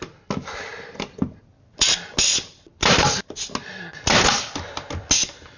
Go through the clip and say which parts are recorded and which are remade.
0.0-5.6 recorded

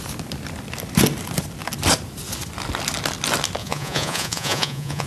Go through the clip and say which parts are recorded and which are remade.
0.0-3.6 recorded; 3.6-5.1 remade